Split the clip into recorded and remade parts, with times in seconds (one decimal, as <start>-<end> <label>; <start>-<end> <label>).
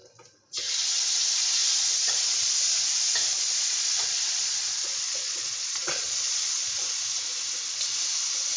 0.0-1.6 recorded; 1.6-2.5 remade; 2.5-3.3 recorded; 3.3-6.8 remade; 6.8-8.6 recorded